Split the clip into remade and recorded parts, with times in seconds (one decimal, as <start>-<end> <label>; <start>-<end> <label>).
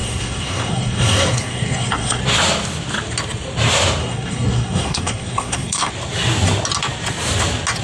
0.0-2.2 remade; 2.2-4.0 recorded; 4.0-5.9 remade; 5.9-7.8 recorded